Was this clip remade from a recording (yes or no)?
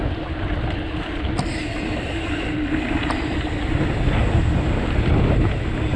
no